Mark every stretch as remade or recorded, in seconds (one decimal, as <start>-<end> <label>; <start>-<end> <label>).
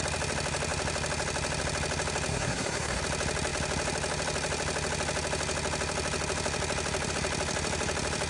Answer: 0.0-2.3 recorded; 2.3-3.0 remade; 3.0-8.3 recorded